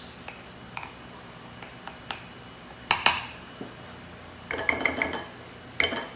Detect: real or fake real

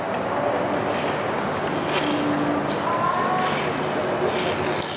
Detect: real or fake real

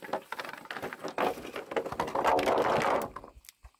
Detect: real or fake real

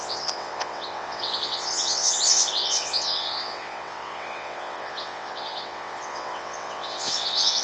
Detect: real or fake fake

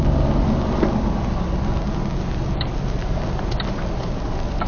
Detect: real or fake real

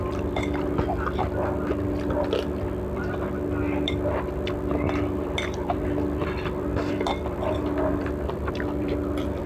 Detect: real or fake fake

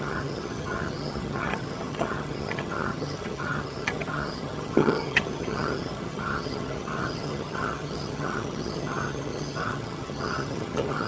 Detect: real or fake fake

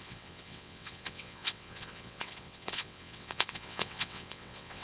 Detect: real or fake fake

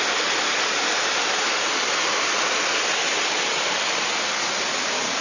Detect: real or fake real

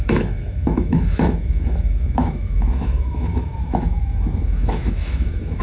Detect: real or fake fake